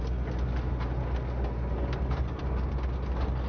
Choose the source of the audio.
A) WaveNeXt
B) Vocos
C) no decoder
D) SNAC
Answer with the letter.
C